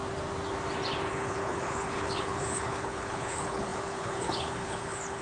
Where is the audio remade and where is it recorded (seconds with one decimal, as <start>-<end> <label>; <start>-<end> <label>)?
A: 0.0-1.1 recorded; 1.1-5.2 remade

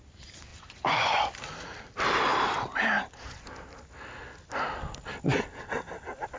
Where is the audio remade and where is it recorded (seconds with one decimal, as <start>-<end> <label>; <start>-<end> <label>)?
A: 0.0-0.5 recorded; 0.5-1.2 remade; 1.2-6.4 recorded